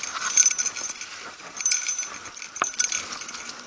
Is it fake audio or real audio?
real